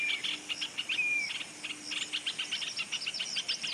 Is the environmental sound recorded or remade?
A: recorded